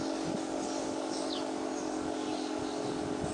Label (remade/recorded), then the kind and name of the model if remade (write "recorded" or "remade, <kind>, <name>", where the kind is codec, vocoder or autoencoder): remade, codec, DAC